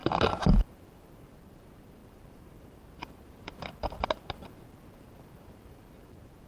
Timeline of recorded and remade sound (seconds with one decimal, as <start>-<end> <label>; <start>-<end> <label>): 0.0-6.5 remade